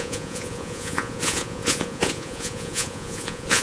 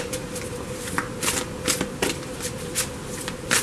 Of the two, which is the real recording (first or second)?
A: second